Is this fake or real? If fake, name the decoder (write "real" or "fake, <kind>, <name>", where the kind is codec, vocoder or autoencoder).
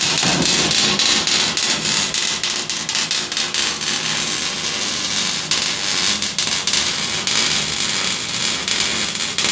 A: real